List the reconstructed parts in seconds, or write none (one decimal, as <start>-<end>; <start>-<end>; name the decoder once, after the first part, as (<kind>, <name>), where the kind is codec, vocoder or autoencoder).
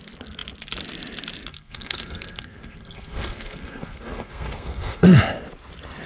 1.5-5.2 (codec, SNAC)